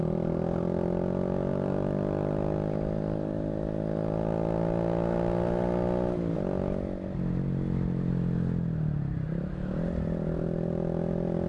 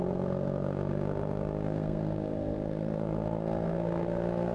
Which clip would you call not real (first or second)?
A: second